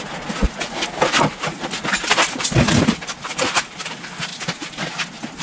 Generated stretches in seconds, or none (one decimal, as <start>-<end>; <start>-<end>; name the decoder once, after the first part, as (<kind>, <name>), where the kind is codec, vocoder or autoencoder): none